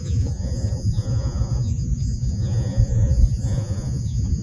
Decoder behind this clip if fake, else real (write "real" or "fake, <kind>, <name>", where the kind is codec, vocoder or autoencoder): fake, vocoder, Vocos